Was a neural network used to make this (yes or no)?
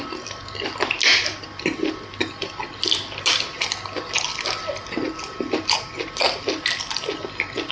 no